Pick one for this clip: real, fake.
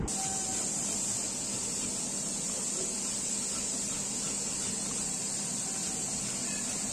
real